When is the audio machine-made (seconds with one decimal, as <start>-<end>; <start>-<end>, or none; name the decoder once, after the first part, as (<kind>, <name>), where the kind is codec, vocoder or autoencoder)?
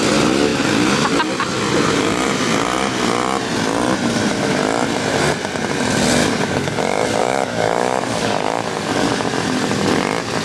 6.2-6.8 (codec, DAC); 7.2-9.3